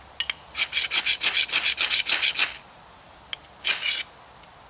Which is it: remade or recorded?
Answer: recorded